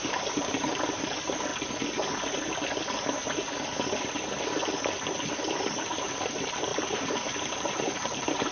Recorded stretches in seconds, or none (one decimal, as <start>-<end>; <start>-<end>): 1.5-5.7